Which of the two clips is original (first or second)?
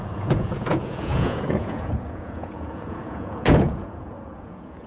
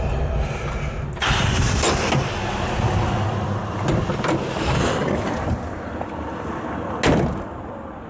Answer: second